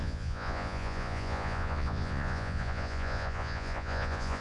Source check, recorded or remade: remade